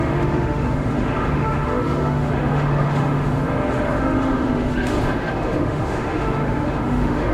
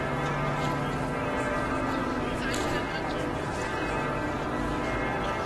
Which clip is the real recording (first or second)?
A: second